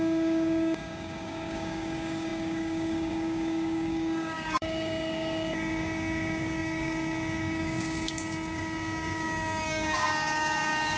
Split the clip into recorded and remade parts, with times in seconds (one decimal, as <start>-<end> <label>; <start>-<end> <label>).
0.0-11.0 remade